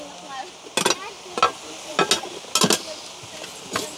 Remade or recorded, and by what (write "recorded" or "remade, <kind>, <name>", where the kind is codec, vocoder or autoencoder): recorded